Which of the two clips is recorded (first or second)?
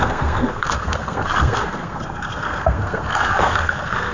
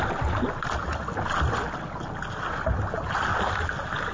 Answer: second